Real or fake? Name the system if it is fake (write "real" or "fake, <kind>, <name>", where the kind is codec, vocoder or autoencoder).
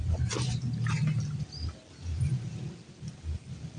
real